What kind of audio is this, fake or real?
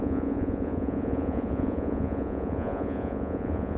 fake